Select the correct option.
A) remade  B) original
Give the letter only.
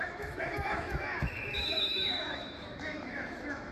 A